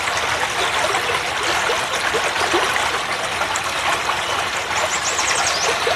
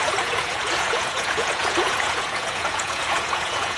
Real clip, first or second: first